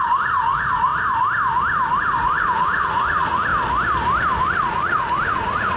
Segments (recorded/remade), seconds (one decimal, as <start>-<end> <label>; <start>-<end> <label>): 0.0-0.9 remade; 0.9-2.0 recorded; 2.0-3.5 remade; 3.5-4.4 recorded; 4.4-5.8 remade